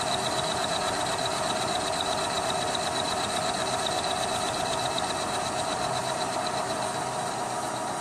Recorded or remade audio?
recorded